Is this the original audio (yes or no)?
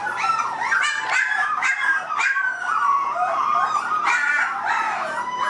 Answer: no